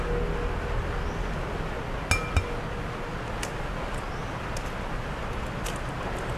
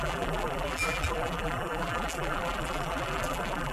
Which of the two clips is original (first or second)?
first